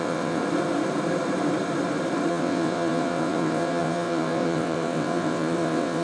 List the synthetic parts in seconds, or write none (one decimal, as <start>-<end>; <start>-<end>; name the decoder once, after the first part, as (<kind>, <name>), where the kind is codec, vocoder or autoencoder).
0.0-0.4 (vocoder, WaveNeXt); 2.3-6.0